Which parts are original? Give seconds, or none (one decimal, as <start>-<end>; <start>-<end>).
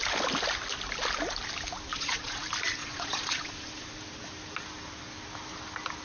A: 0.0-1.9; 2.4-2.8; 3.5-6.0